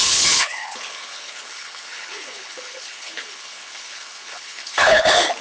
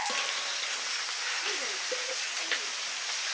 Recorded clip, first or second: second